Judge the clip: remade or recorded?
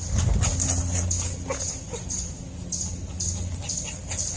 recorded